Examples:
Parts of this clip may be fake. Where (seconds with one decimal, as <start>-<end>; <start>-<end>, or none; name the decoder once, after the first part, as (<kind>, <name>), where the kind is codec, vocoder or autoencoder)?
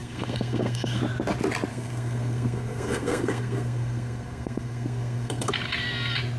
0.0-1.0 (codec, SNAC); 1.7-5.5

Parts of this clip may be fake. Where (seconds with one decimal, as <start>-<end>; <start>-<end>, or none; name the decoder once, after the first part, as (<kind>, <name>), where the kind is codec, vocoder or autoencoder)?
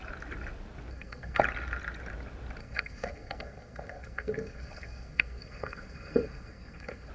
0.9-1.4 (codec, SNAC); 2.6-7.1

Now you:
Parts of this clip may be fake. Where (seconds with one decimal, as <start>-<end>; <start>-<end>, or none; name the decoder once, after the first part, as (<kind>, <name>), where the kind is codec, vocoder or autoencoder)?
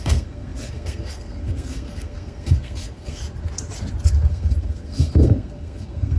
0.0-3.2 (codec, SNAC); 4.3-6.2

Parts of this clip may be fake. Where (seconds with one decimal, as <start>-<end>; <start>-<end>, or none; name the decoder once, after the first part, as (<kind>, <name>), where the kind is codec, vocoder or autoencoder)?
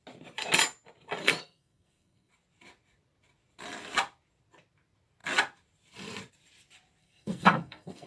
1.2-2.3 (codec, SNAC); 7.0-8.1